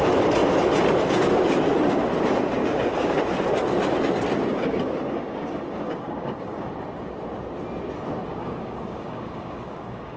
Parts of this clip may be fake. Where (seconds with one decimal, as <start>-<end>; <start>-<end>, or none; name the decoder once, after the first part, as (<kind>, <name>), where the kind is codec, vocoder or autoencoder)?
2.6-3.2 (codec, DAC); 4.5-6.7; 8.3-10.2